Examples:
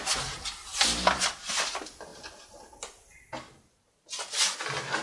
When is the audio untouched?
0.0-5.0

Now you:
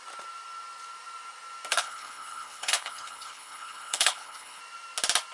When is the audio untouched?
0.0-1.7; 4.6-5.3

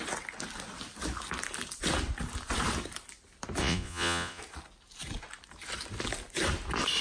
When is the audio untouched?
0.0-3.6; 4.4-7.0

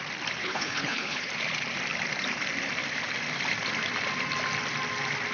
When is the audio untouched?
0.0-0.4; 1.3-5.3

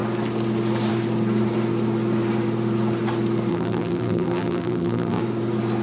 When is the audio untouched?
0.0-3.5; 5.2-5.8

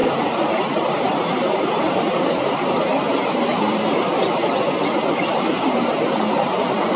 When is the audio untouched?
4.2-7.0

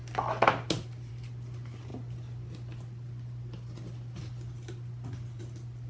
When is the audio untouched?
0.0-5.9